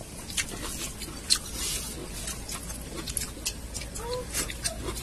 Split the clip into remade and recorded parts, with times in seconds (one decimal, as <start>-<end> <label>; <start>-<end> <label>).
0.0-5.0 recorded